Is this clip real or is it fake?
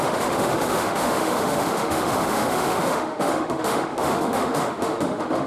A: fake